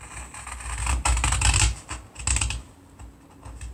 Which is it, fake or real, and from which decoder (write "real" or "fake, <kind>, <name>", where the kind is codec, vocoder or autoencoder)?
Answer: real